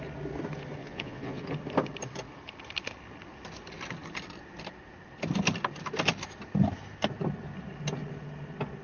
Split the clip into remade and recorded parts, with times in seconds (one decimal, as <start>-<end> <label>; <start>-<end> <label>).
0.0-0.8 recorded; 0.8-1.4 remade; 1.4-8.8 recorded